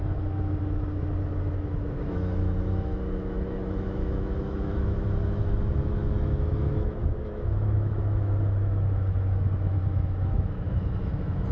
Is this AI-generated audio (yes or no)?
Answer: yes